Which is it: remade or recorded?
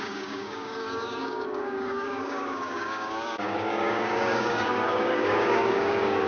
remade